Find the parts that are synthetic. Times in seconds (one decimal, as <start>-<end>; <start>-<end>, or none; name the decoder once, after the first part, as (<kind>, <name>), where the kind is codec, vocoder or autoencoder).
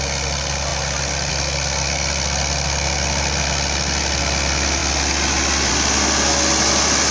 none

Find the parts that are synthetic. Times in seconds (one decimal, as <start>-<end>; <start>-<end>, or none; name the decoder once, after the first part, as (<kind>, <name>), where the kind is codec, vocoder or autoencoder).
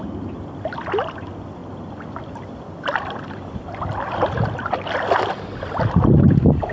none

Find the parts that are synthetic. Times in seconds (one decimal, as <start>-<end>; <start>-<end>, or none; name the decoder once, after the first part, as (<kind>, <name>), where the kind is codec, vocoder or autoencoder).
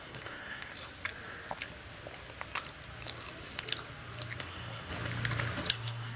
0.0-0.7 (codec, SNAC); 4.4-4.9; 5.7-6.2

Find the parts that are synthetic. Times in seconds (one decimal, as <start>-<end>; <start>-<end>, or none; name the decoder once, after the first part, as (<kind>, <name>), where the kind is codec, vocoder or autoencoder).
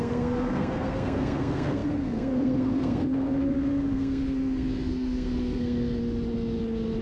0.0-6.0 (codec, SNAC)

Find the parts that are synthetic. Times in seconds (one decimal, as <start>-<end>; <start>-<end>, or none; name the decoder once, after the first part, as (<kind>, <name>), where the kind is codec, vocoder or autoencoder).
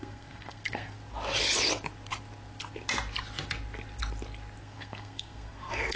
0.0-1.0 (codec, SNAC); 4.6-6.0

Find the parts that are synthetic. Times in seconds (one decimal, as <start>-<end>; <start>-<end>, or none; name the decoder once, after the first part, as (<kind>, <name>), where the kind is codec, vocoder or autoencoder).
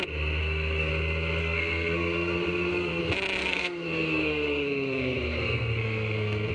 0.4-0.9 (codec, SNAC); 1.4-3.0; 3.4-6.5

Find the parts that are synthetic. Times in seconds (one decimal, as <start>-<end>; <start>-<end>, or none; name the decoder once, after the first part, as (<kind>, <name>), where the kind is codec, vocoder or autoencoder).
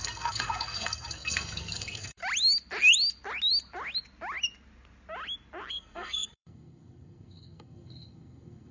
0.0-2.2 (codec, SNAC); 5.7-8.7